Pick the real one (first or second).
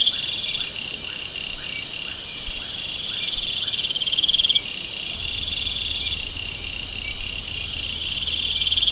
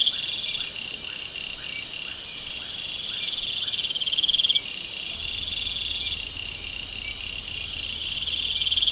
second